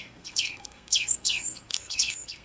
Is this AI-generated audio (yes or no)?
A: yes